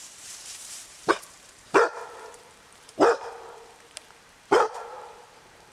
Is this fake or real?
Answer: fake